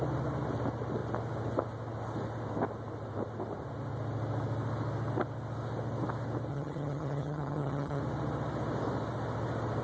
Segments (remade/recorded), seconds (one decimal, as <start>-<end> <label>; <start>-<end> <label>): 0.0-6.5 recorded; 6.5-8.0 remade; 8.0-9.8 recorded